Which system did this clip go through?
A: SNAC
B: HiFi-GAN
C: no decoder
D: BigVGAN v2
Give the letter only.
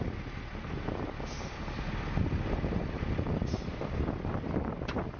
D